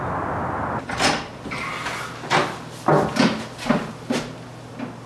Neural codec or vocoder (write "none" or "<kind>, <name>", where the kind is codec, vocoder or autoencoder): none